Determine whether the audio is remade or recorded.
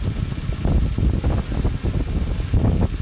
recorded